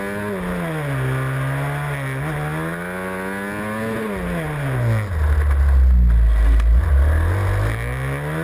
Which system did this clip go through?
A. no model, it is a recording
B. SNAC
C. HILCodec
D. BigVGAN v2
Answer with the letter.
A